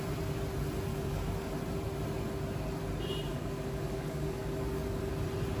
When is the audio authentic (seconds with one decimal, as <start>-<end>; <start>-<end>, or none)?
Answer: 0.0-0.9; 1.5-3.3; 5.1-5.6